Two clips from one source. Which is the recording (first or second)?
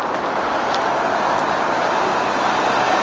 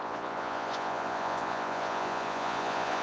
first